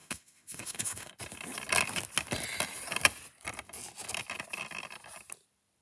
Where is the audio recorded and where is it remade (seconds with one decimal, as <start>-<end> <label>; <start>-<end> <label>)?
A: 0.0-1.1 remade; 1.1-5.8 recorded